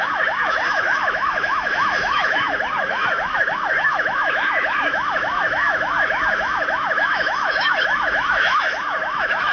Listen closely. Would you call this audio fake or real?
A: fake